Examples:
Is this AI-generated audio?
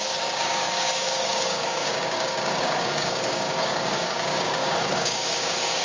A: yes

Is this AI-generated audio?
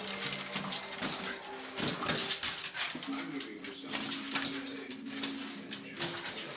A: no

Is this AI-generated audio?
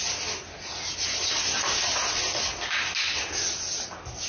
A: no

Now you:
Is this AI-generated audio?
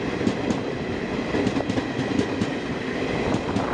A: no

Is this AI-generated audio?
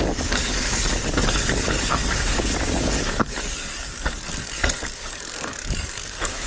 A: yes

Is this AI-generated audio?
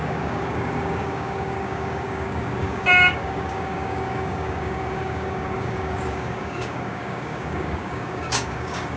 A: yes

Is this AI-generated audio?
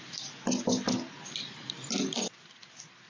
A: no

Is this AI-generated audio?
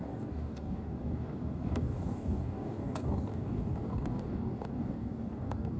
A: yes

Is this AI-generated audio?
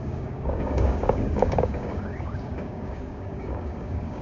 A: yes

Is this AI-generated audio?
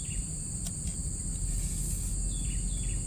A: no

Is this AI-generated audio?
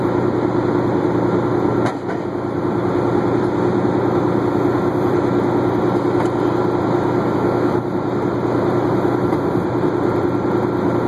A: no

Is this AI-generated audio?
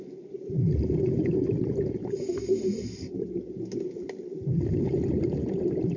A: no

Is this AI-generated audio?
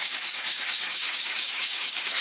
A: yes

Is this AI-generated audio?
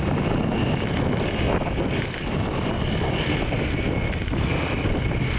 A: no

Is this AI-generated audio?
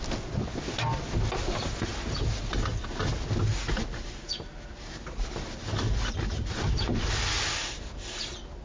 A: no